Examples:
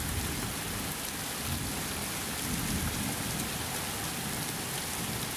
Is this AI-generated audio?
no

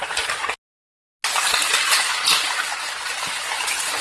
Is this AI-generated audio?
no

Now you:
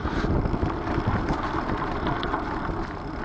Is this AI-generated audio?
no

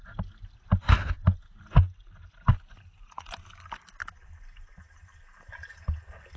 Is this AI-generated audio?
no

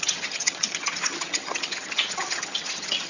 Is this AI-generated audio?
yes